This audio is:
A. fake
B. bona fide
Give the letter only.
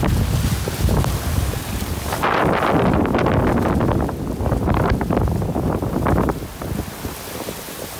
B